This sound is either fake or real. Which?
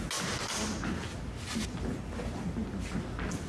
real